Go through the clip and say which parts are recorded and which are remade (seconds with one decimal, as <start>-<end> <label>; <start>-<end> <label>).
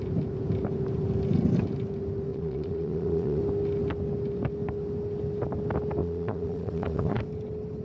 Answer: 0.0-2.3 recorded; 2.3-3.4 remade; 3.4-6.0 recorded; 6.0-7.2 remade; 7.2-7.8 recorded